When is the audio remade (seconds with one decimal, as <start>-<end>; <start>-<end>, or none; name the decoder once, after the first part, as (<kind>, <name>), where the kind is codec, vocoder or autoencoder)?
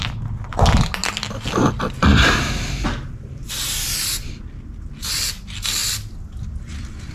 2.1-3.5 (vocoder, BigVGAN v2)